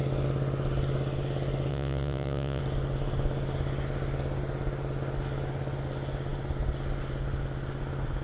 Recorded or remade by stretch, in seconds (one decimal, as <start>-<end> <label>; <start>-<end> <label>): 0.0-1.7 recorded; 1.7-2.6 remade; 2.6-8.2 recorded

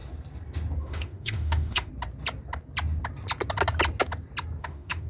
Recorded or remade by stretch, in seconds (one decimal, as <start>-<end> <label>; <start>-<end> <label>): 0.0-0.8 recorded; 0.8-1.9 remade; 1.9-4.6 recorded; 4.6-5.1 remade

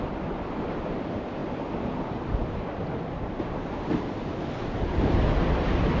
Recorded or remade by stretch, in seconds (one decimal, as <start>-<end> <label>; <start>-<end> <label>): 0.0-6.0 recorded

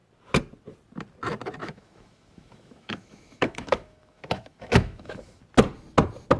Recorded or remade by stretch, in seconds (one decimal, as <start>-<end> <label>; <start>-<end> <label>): 0.0-1.6 recorded; 1.6-5.4 remade; 5.4-6.4 recorded

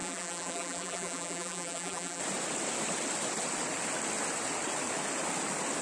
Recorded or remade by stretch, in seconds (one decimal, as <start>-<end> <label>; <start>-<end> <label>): 0.0-2.2 remade; 2.2-5.8 recorded

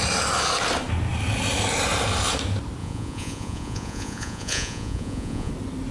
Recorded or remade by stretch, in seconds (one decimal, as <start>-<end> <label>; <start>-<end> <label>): 0.0-2.8 recorded; 2.8-5.5 remade; 5.5-5.9 recorded